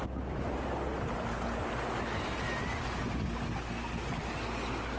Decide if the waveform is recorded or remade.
recorded